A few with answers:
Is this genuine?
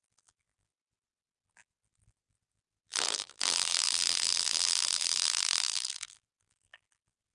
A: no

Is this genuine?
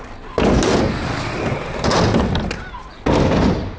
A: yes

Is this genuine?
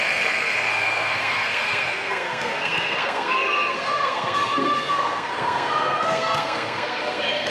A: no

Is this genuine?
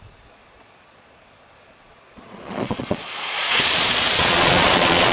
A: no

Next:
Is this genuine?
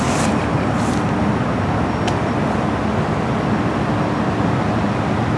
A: yes